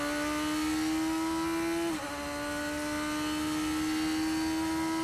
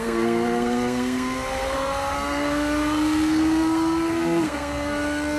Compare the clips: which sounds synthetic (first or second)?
second